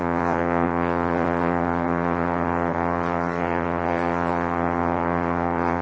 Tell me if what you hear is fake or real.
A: fake